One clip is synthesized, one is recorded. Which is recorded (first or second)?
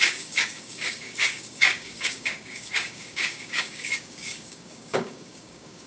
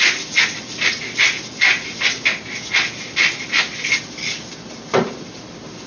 second